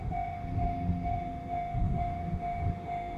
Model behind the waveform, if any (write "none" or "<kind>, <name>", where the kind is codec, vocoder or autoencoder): autoencoder, DAC-VAE